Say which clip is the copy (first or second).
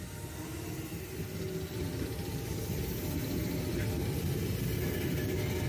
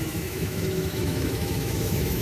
second